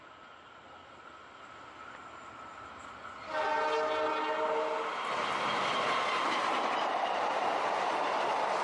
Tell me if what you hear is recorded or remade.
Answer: recorded